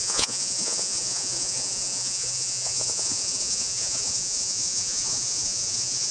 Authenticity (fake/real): fake